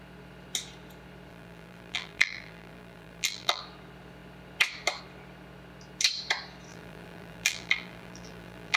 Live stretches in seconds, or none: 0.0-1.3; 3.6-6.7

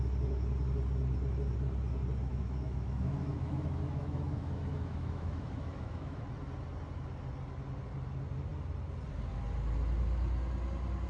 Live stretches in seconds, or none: 0.0-2.3; 6.2-11.1

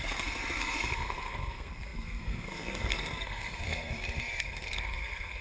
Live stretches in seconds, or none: none

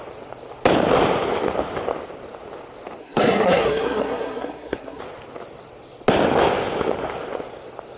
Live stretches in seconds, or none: 0.0-3.0; 5.0-8.0

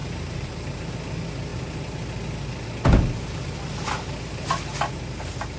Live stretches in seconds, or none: 0.9-5.6

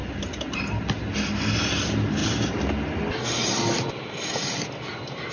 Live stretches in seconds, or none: 0.0-2.2; 2.7-3.4

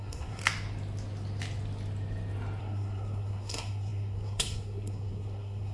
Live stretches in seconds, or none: 0.4-2.6

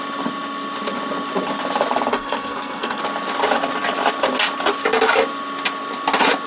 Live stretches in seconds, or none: 0.0-2.1; 3.0-6.5